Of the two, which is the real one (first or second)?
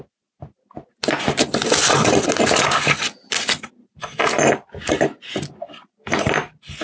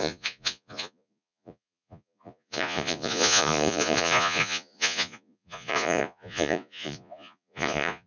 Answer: first